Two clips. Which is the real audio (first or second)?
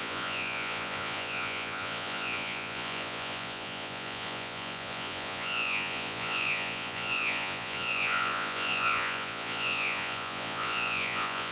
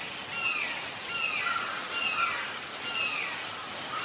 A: second